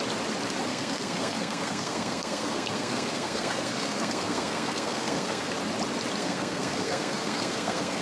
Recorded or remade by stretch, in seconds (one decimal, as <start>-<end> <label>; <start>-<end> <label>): 0.0-0.7 recorded; 0.7-5.5 remade; 5.5-6.2 recorded; 6.2-8.0 remade